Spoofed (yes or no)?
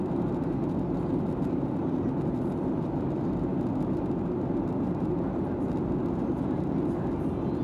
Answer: no